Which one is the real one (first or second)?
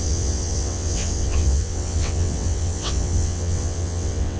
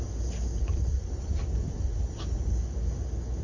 second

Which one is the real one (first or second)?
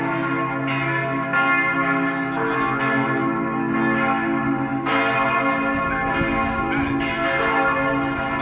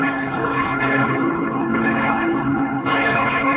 first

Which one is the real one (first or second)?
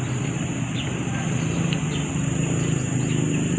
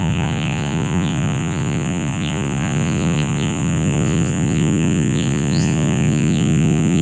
first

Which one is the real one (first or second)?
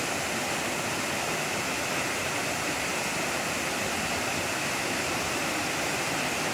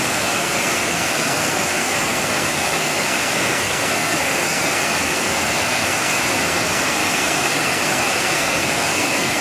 first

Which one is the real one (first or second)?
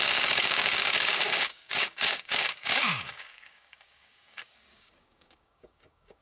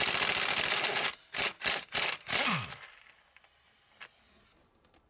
second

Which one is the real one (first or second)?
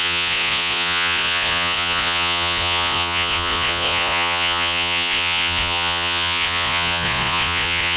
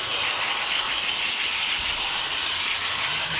second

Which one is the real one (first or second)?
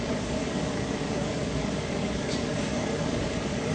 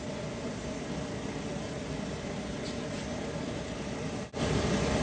second